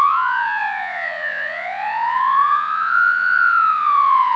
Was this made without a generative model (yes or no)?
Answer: no